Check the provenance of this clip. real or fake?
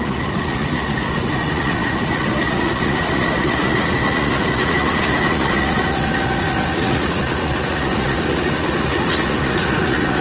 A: fake